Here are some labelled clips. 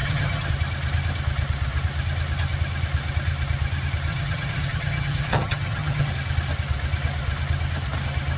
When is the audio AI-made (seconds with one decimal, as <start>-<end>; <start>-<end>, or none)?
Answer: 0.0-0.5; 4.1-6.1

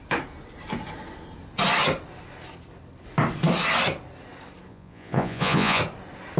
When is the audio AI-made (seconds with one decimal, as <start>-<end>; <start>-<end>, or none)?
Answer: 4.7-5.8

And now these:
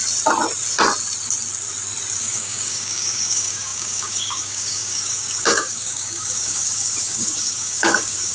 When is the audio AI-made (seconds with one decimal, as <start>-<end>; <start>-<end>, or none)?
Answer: 2.2-8.3

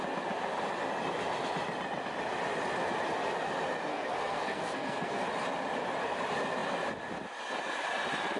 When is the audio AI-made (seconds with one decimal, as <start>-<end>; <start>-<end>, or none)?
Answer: 3.9-5.2